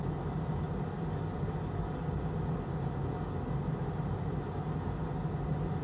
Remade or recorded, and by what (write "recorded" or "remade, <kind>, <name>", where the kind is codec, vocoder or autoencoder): recorded